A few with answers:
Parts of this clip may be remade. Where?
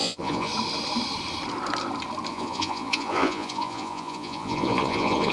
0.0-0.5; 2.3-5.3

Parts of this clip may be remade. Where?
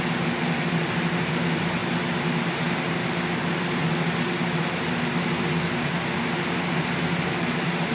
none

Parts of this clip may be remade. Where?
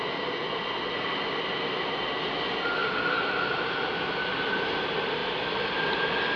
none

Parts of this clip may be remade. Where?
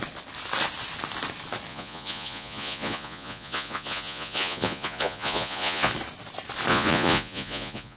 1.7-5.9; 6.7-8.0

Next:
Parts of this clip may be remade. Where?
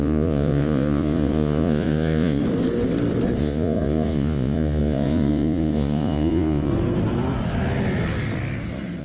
0.0-2.4; 3.4-6.7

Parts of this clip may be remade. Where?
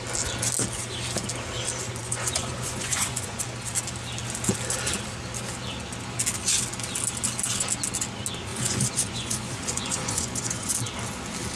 2.0-3.4; 8.5-10.7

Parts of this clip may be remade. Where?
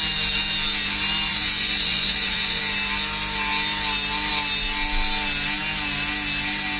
1.3-2.6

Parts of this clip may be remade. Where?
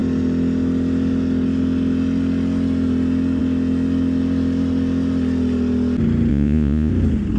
6.3-6.9